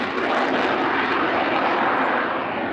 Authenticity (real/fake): real